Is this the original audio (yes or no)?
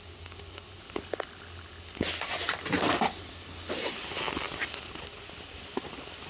yes